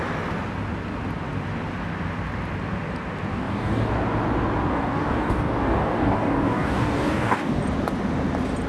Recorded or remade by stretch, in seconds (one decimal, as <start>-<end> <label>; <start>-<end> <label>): 0.0-3.3 recorded; 3.3-3.9 remade; 3.9-4.7 recorded; 4.7-7.6 remade; 7.6-8.7 recorded

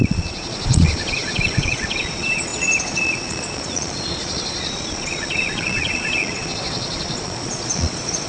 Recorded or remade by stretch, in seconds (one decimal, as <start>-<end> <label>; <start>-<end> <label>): 0.0-8.3 remade

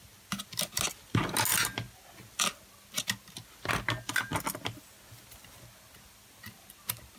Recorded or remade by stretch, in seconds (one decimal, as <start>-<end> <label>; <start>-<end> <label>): 0.0-7.2 recorded

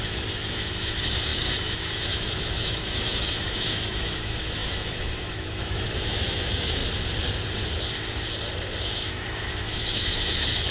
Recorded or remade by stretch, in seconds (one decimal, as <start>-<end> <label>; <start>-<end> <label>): 0.0-6.8 remade; 6.8-8.8 recorded; 8.8-10.7 remade

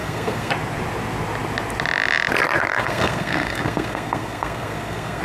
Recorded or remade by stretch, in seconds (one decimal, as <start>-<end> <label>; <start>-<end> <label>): 0.0-0.5 remade; 0.5-2.7 recorded; 2.7-5.2 remade

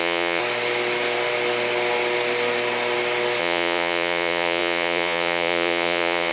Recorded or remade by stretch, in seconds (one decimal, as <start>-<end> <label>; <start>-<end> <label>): 0.0-0.4 remade; 0.4-3.4 recorded; 3.4-6.3 remade

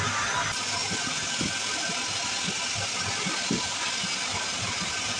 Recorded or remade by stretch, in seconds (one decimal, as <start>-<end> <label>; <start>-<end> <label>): 0.0-5.2 recorded

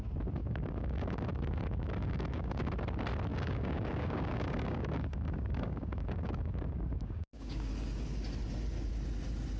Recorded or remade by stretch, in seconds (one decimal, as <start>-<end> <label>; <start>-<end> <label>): 0.0-0.4 recorded; 0.4-2.7 remade; 2.7-3.3 recorded; 3.3-7.7 remade; 7.7-9.6 recorded